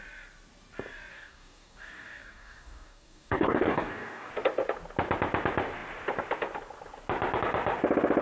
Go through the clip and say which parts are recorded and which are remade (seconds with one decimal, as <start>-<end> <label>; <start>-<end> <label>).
0.0-1.1 recorded; 1.1-4.3 remade; 4.3-8.2 recorded